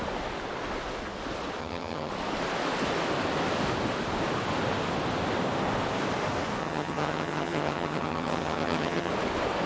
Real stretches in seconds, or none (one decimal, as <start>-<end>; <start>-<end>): 0.0-1.6; 2.1-6.6; 9.1-9.7